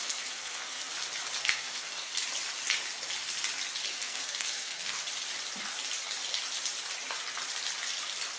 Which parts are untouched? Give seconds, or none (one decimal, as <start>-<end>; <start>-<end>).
0.9-1.4; 2.1-3.9; 5.1-8.4